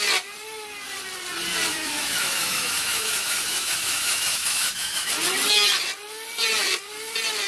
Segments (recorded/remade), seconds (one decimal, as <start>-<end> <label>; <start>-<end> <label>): 0.0-1.7 recorded; 1.7-5.1 remade; 5.1-7.5 recorded